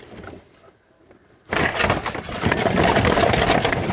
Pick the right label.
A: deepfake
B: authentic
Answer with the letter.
B